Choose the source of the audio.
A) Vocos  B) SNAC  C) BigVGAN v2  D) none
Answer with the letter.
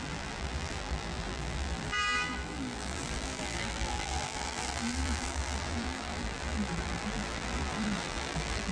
C